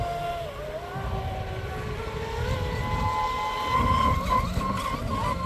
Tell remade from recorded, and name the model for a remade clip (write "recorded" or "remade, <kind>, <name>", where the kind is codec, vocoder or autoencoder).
recorded